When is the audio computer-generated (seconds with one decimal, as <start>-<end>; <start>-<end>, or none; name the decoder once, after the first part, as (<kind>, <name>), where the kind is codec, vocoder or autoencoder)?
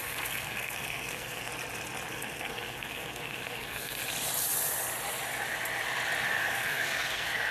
0.0-1.5 (codec, SNAC); 2.1-4.0; 6.3-7.5